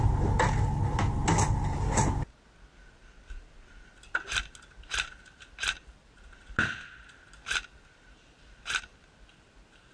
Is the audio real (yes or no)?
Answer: yes